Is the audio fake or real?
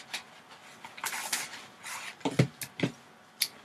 real